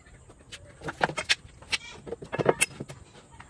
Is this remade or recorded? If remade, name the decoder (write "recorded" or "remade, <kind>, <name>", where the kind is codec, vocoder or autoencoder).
recorded